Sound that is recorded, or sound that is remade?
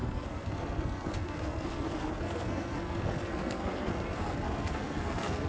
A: remade